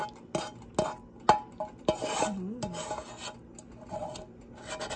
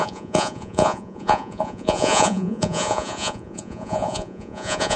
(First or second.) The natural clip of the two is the first